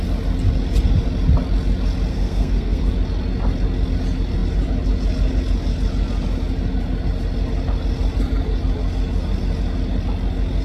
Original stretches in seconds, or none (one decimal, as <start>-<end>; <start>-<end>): 0.0-2.1; 2.9-10.6